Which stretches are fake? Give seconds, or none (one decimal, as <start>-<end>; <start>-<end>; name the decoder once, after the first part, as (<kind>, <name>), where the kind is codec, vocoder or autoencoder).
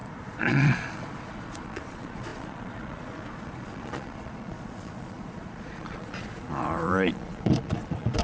0.0-8.2 (vocoder, Vocos)